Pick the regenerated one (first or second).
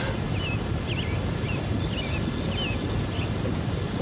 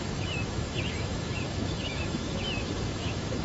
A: second